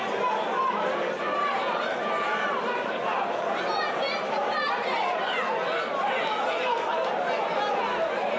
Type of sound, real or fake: real